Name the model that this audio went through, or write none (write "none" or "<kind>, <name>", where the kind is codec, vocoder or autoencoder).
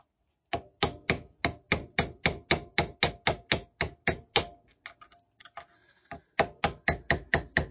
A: none